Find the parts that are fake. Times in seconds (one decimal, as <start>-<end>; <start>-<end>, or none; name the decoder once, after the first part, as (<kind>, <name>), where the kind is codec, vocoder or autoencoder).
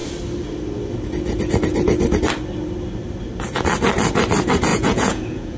4.7-5.6 (vocoder, Vocos)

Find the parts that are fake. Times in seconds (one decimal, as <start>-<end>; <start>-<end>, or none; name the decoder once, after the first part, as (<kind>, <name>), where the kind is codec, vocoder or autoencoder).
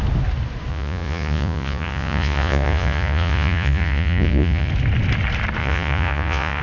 0.7-4.7 (vocoder, Vocos); 5.6-6.6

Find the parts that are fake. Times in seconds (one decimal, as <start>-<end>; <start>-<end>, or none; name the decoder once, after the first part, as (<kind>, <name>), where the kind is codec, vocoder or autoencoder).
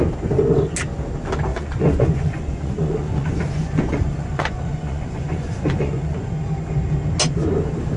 1.5-6.3 (vocoder, Vocos)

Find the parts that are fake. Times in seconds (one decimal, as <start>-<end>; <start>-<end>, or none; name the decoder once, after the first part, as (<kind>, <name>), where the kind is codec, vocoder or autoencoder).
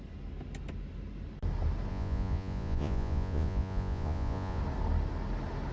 1.9-4.6 (vocoder, Vocos)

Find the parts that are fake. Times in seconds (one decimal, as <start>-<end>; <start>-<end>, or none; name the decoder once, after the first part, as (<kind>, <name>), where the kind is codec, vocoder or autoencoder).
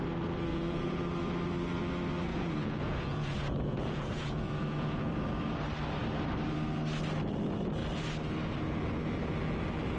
0.5-1.1 (vocoder, Vocos); 2.3-5.1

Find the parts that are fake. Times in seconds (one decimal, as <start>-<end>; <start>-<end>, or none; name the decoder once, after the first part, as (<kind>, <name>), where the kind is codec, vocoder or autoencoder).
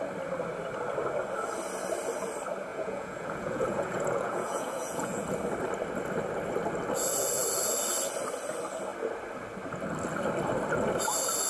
2.7-5.2 (vocoder, Vocos)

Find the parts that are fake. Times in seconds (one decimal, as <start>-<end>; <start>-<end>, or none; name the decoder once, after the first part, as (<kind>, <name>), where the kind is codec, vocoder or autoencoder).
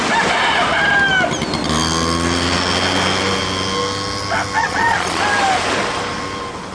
4.6-5.2 (vocoder, Vocos)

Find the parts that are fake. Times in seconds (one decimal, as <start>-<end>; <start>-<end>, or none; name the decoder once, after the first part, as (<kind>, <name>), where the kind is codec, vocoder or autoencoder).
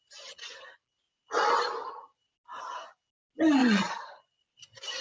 3.6-4.4 (vocoder, Vocos)